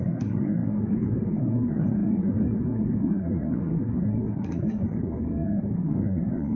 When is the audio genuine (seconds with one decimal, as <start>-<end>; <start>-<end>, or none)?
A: none